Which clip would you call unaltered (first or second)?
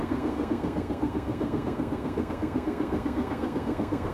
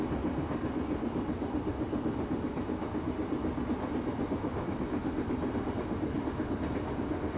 second